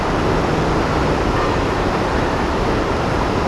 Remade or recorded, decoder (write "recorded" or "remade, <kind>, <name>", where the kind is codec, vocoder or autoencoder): recorded